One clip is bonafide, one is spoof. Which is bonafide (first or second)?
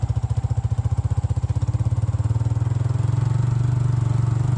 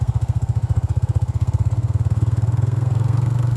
first